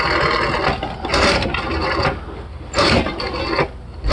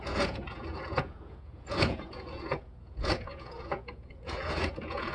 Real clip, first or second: first